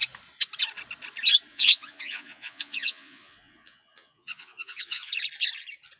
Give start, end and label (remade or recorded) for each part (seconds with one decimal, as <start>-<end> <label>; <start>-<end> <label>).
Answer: 0.0-1.5 recorded; 1.5-5.1 remade; 5.1-6.0 recorded

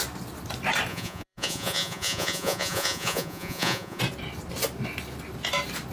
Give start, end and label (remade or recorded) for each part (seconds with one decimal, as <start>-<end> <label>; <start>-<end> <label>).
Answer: 0.0-0.9 recorded; 0.9-4.0 remade; 4.0-5.9 recorded

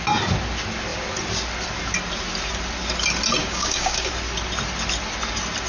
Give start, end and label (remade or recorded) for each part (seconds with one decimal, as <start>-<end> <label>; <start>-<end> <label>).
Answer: 0.0-3.4 recorded; 3.4-4.1 remade; 4.1-5.7 recorded